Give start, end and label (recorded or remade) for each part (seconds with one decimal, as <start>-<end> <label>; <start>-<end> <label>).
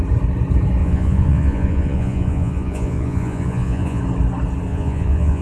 0.0-0.8 recorded; 0.8-4.0 remade; 4.0-4.7 recorded; 4.7-5.4 remade